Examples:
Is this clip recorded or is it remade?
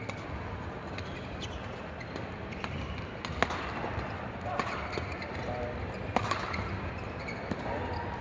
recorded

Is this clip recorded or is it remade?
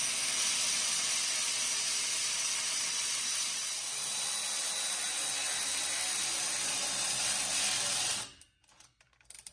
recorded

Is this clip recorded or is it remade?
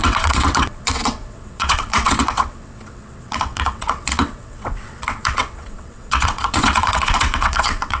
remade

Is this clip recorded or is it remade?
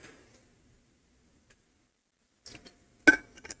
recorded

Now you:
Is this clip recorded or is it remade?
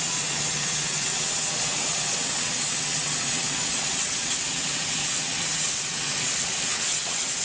remade